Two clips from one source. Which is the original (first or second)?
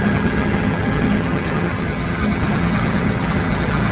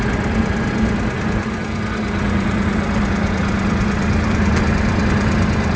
second